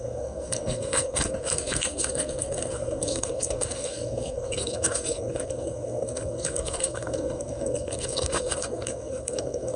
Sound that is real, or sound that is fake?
fake